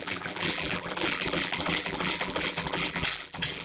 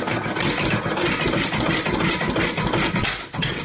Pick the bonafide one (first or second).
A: second